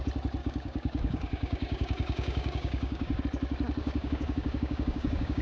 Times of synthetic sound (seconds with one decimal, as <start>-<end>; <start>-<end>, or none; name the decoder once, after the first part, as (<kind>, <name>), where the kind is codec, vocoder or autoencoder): 0.4-3.2 (codec, DAC); 3.8-5.4